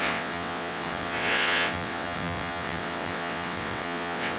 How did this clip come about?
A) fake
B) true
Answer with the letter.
A